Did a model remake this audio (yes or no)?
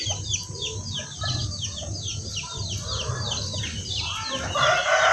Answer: no